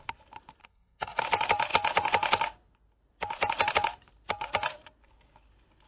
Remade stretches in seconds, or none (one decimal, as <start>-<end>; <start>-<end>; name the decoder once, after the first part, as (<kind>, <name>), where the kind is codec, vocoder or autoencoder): 0.6-1.2 (codec, SNAC)